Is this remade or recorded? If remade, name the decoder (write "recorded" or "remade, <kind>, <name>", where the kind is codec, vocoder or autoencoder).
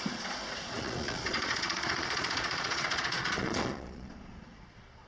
remade, vocoder, Vocos